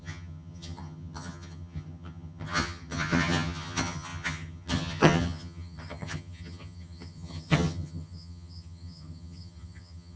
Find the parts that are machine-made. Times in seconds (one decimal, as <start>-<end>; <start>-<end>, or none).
0.0-10.2